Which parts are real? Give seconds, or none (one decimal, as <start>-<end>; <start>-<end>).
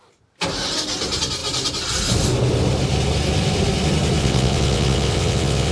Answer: 0.0-4.2